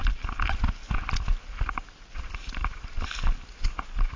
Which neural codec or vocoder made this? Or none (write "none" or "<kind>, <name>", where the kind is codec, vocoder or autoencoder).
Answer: none